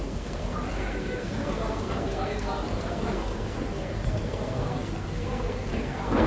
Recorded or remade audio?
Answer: remade